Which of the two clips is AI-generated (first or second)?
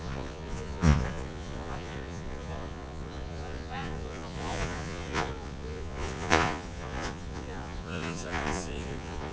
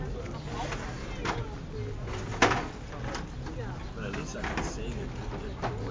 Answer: first